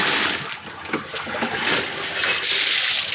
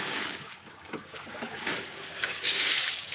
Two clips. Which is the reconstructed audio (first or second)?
second